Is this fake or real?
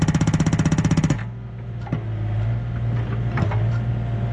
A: real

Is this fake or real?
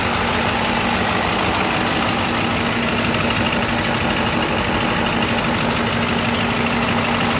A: real